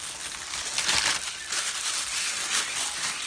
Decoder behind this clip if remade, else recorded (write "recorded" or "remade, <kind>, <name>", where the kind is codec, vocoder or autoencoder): recorded